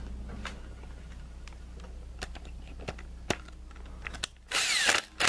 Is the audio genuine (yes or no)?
yes